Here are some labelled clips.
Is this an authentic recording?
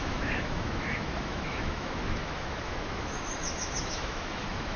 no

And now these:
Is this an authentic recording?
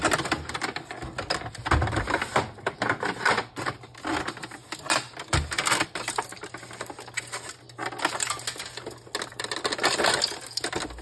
yes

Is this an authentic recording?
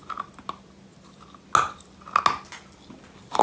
yes